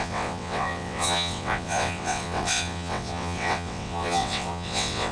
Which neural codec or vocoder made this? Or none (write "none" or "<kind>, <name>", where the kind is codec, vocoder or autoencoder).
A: vocoder, WaveNeXt